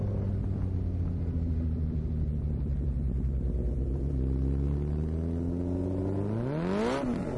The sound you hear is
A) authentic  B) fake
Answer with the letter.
A